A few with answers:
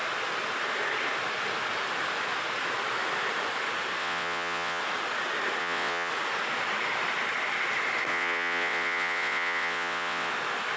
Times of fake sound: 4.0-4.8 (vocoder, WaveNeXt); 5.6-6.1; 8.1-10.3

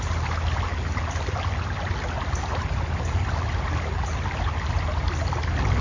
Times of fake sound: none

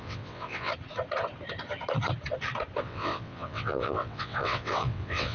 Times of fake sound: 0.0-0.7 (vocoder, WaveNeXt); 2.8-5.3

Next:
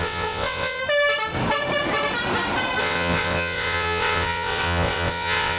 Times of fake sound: 0.0-0.8 (vocoder, WaveNeXt); 2.8-5.6

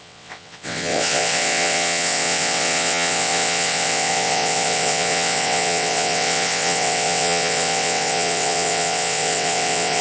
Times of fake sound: 0.0-10.0 (vocoder, WaveNeXt)

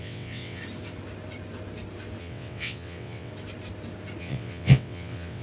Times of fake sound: 0.0-0.6 (vocoder, WaveNeXt); 2.2-3.3; 4.2-5.4

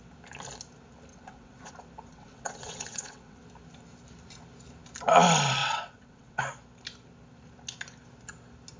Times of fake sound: 1.1-1.7 (vocoder, WaveNeXt); 2.1-3.4; 5.6-6.4